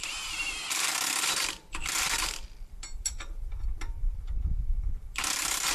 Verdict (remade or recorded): remade